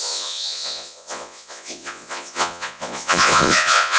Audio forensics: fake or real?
fake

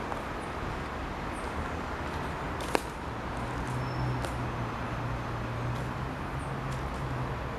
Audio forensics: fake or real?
real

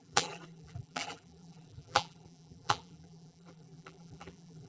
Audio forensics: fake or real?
fake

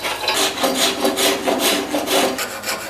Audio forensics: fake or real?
real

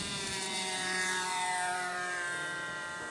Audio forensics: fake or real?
fake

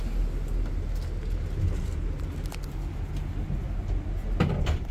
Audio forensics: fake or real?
real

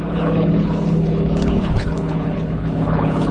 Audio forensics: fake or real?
fake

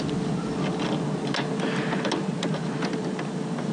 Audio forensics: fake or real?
real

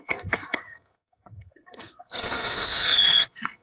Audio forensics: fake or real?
fake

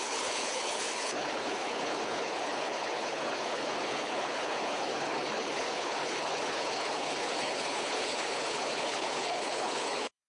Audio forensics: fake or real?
fake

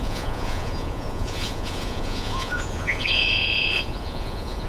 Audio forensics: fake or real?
fake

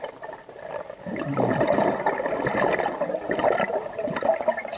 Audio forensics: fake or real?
real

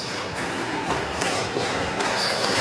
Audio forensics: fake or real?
fake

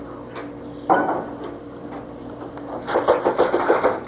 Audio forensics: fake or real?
fake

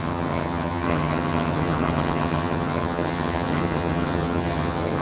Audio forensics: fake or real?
fake